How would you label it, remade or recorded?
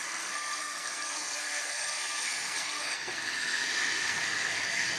remade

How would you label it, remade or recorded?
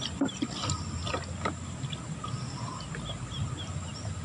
recorded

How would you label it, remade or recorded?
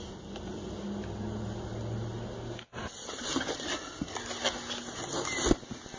recorded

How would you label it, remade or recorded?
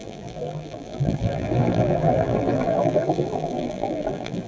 remade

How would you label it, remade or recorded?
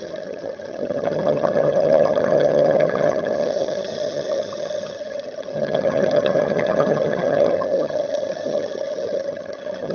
remade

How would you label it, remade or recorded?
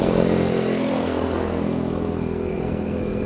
remade